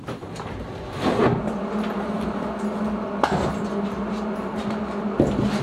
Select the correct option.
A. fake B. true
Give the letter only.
B